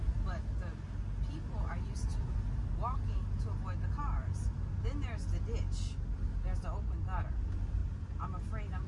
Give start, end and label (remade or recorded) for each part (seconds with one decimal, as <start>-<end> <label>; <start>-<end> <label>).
0.0-8.9 recorded